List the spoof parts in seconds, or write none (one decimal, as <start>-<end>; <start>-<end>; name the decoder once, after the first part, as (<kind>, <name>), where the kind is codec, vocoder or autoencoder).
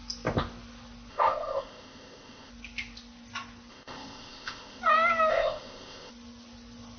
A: 1.1-2.5 (codec, ZipCodec); 3.7-4.8; 5.3-6.1